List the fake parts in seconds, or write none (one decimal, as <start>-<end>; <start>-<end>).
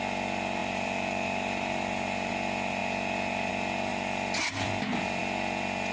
0.6-2.3; 3.9-5.2